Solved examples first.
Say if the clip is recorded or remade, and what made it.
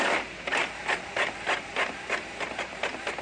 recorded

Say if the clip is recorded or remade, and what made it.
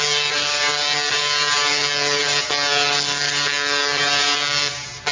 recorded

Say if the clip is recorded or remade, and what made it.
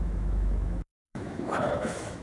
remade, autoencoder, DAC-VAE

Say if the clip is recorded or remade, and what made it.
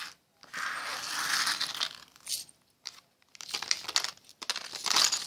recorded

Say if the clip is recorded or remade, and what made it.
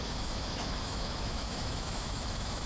remade, autoencoder, DAC-VAE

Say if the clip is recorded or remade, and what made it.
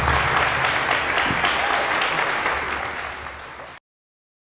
recorded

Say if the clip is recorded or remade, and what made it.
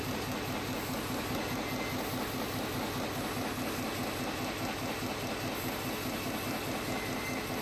recorded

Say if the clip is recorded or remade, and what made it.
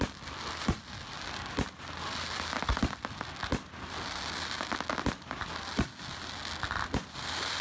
recorded